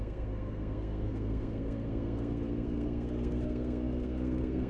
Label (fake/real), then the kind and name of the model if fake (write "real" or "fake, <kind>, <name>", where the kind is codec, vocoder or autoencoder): fake, codec, SNAC